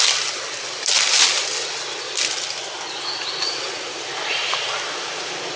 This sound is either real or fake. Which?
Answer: real